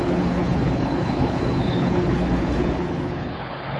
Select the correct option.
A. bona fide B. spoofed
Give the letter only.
B